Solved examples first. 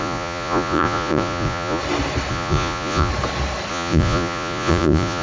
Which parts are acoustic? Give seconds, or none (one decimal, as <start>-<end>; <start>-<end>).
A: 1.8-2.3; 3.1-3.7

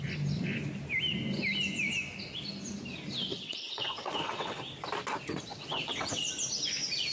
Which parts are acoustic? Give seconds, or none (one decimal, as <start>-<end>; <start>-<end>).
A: 0.0-3.3; 4.6-5.5; 6.3-7.1

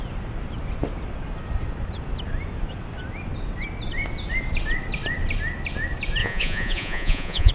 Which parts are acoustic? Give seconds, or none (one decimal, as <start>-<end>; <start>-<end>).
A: 0.0-6.2

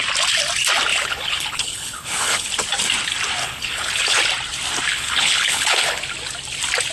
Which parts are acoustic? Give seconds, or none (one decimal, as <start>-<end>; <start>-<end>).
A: 0.0-0.9; 2.5-3.4; 4.2-4.9; 6.0-6.9

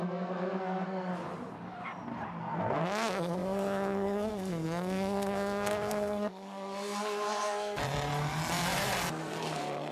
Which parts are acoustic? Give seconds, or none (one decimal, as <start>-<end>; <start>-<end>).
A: 1.1-2.4; 7.8-9.2

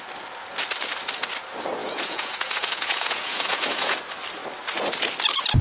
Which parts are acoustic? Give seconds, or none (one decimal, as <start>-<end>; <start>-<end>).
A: 0.0-1.8; 4.0-5.6

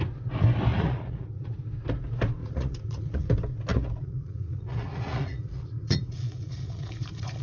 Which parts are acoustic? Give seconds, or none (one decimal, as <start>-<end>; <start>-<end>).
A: 0.0-0.7; 1.6-2.4; 3.3-3.7